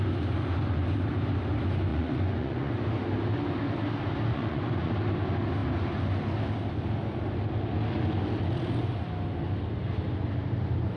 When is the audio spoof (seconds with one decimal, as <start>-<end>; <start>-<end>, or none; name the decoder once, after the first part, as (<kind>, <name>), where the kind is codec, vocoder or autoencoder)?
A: 1.9-2.7 (vocoder, Vocos); 4.3-4.9